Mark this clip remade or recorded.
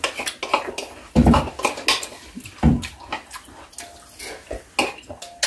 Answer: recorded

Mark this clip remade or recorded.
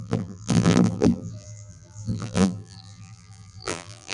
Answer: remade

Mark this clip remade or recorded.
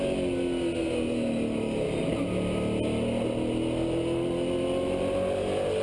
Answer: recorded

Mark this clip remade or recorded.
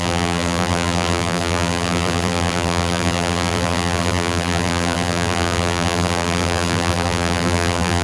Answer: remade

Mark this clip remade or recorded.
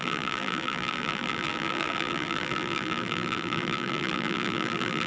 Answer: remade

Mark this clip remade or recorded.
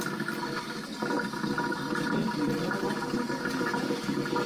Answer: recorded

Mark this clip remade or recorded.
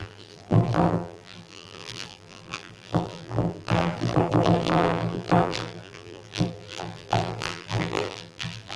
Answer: remade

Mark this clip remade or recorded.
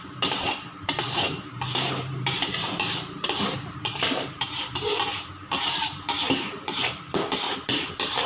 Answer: remade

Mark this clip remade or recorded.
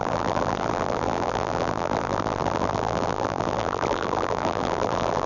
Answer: remade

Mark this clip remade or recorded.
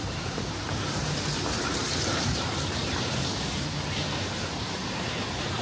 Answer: remade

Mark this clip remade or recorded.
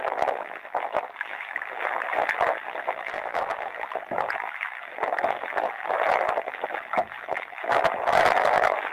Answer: remade